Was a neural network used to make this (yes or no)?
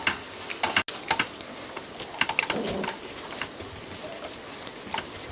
no